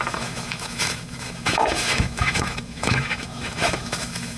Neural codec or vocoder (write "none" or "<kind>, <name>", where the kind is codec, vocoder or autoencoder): autoencoder, DAC-VAE